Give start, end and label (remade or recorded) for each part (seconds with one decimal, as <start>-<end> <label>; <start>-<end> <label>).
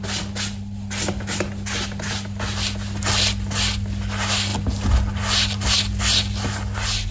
0.0-7.1 recorded